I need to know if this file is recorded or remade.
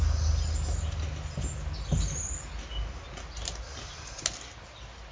recorded